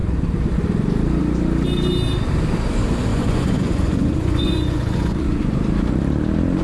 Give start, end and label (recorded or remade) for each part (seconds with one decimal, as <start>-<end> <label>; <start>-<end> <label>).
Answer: 0.0-3.1 recorded; 3.1-5.4 remade; 5.4-6.6 recorded